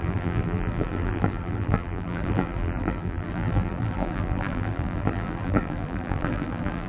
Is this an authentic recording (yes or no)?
no